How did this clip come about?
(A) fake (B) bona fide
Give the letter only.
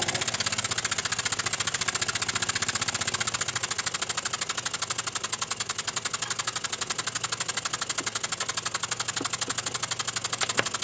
B